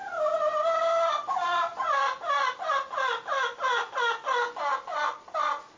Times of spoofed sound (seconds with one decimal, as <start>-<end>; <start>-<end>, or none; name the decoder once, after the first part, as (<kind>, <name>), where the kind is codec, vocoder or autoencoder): none